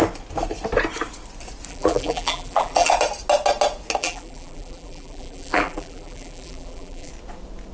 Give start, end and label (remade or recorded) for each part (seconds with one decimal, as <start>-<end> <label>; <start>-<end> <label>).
0.0-1.7 recorded; 1.7-2.9 remade; 2.9-4.0 recorded; 4.0-7.1 remade; 7.1-7.7 recorded